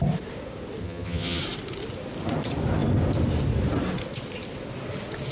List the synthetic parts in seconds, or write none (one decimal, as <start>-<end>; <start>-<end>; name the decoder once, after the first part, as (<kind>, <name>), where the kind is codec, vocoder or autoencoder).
0.8-1.4 (vocoder, HiFi-GAN)